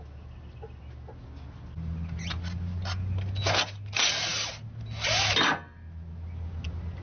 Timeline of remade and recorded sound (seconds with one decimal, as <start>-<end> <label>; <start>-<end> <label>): 0.0-7.0 recorded